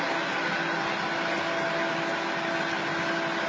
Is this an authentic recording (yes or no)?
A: yes